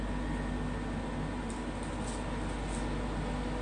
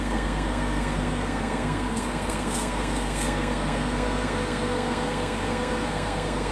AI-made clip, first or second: second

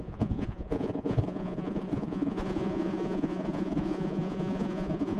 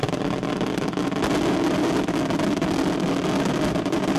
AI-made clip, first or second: first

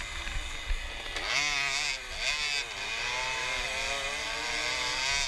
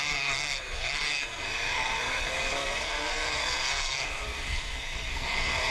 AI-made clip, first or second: second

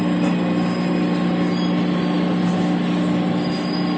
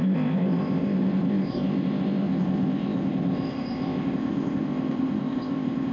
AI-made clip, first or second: second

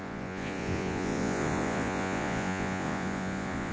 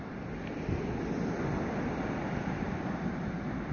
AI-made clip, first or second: first